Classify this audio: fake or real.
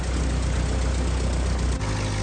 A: real